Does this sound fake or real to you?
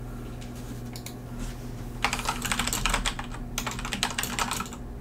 real